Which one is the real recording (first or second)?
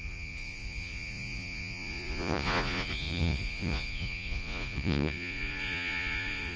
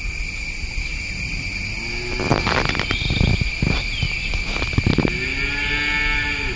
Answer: second